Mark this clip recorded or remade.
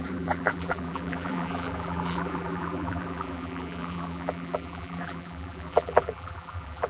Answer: remade